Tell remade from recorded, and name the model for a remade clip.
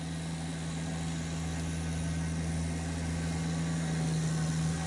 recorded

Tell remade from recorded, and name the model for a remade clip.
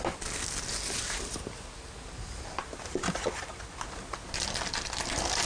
recorded